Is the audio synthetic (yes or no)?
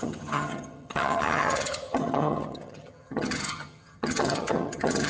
yes